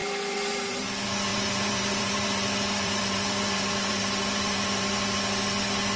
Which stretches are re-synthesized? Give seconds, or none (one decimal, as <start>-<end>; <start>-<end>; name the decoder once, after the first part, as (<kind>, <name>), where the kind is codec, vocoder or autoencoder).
0.0-0.8 (vocoder, BigVGAN v2); 1.3-4.9